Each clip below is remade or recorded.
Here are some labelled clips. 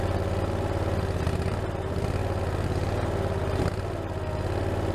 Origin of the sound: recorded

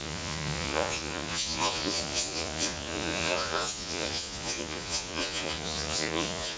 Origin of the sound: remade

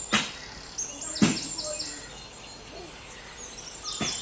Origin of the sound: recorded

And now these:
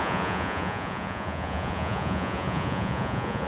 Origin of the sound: remade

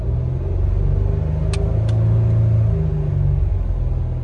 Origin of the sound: recorded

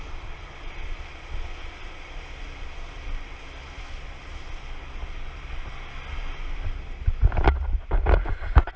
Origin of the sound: recorded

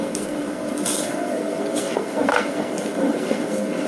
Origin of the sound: remade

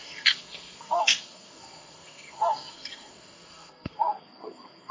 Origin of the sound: remade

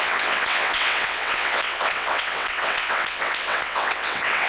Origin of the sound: remade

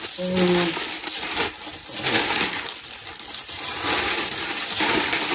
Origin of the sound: recorded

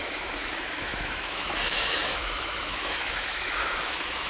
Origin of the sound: remade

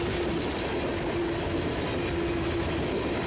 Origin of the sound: recorded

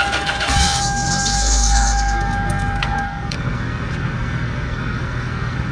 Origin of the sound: remade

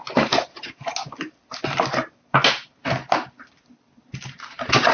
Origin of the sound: recorded